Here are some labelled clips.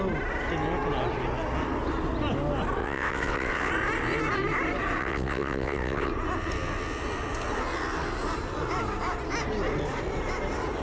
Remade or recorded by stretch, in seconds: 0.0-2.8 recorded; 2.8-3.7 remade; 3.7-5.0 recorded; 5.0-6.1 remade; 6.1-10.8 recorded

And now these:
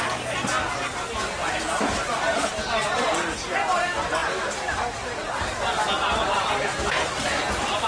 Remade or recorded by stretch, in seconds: 0.0-7.9 recorded

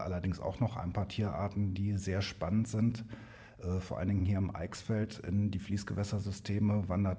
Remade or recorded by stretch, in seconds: 0.0-4.2 recorded; 4.2-5.1 remade; 5.1-7.2 recorded